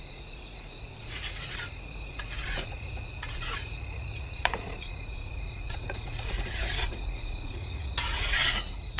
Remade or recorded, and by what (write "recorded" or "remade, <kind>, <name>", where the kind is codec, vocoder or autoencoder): remade, vocoder, Vocos